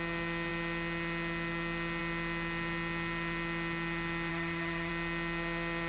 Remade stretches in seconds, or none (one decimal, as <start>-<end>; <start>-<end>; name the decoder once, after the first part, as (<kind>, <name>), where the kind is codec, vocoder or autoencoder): 4.3-4.9 (autoencoder, DAC-VAE)